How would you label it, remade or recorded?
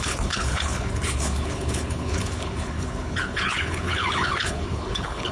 remade